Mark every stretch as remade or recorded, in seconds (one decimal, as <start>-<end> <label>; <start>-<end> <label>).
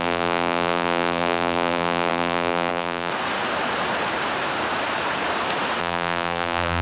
0.0-3.1 remade; 3.1-5.8 recorded; 5.8-6.8 remade